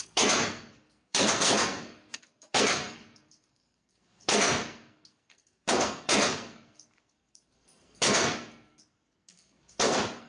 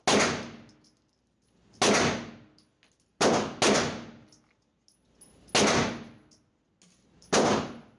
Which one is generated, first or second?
first